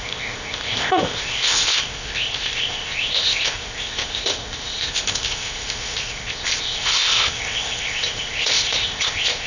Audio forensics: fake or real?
fake